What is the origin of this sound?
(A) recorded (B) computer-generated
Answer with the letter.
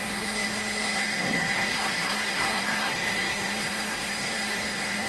B